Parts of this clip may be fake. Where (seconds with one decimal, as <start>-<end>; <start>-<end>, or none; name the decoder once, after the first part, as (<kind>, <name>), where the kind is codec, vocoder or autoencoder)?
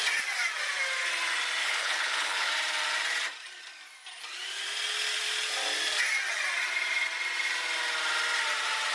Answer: 1.6-2.5 (codec, HILCodec)